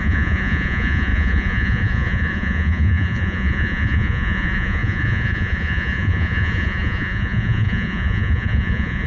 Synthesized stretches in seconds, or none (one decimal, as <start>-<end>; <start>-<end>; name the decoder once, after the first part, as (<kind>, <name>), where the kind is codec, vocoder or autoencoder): 0.0-9.1 (vocoder, Vocos)